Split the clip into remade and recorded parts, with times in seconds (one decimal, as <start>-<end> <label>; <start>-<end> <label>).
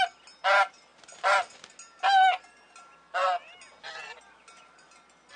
0.0-5.4 recorded